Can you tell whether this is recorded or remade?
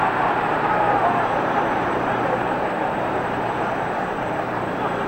remade